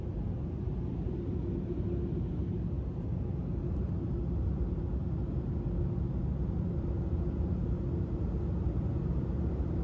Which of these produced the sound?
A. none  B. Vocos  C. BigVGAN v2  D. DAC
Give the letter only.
A